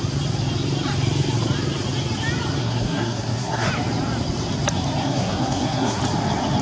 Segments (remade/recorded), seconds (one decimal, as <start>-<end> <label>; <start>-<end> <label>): 0.0-2.6 recorded; 2.6-3.7 remade; 3.7-5.0 recorded; 5.0-6.0 remade; 6.0-6.6 recorded